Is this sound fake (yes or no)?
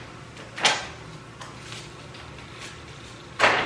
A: no